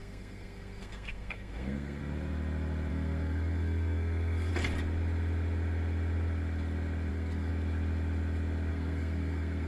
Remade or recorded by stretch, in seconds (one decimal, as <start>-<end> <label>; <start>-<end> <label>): 0.0-2.0 remade; 2.0-2.9 recorded; 2.9-4.5 remade; 4.5-7.1 recorded; 7.1-7.5 remade; 7.5-8.7 recorded; 8.7-9.7 remade